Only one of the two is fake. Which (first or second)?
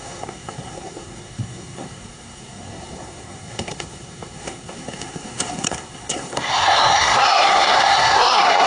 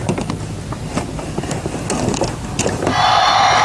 first